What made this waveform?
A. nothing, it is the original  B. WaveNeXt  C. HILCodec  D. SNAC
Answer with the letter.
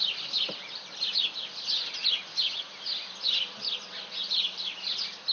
A